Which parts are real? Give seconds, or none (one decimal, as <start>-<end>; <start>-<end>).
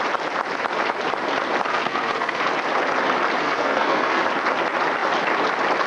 0.0-1.7; 2.4-3.4; 4.2-5.9